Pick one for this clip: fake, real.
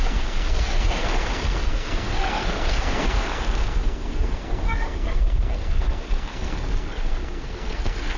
fake